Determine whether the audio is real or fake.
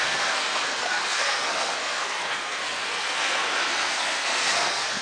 fake